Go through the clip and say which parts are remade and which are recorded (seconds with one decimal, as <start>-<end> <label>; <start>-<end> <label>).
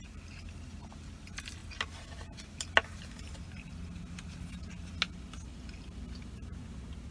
0.0-7.1 recorded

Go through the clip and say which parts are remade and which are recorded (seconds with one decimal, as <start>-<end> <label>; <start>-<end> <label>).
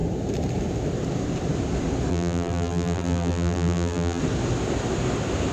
0.0-2.1 recorded; 2.1-4.2 remade; 4.2-5.5 recorded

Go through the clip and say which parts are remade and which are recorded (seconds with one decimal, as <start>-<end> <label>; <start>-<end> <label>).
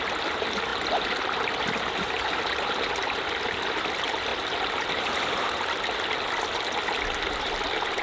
0.0-8.0 recorded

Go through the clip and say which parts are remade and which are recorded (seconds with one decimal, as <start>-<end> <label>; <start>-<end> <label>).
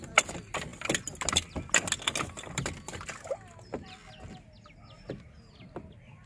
0.0-6.3 recorded